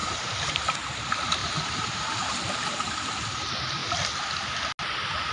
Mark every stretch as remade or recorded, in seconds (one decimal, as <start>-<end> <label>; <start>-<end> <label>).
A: 0.0-0.5 remade; 0.5-1.4 recorded; 1.4-3.2 remade; 3.2-5.3 recorded